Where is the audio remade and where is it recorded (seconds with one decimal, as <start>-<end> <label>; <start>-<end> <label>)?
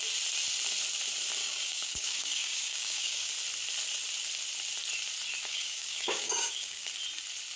0.0-1.4 recorded; 1.4-3.3 remade; 3.3-5.5 recorded; 5.5-6.9 remade; 6.9-7.6 recorded